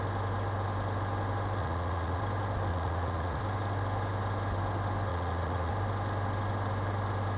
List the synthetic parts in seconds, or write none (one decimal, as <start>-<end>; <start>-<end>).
1.6-2.2; 2.7-3.4; 5.1-5.7